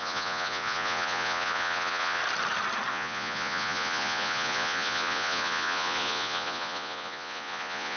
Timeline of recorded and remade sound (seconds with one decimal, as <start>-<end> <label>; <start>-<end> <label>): 0.0-2.2 remade; 2.2-2.9 recorded; 2.9-8.0 remade